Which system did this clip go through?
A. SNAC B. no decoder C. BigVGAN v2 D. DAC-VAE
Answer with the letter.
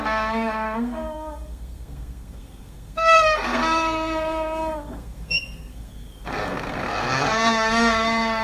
A